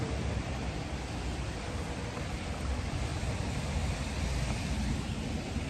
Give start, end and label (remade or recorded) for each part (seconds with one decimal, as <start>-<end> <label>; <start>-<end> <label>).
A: 0.0-3.1 remade; 3.1-4.9 recorded; 4.9-5.7 remade